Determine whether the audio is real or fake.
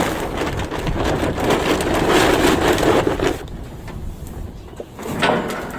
real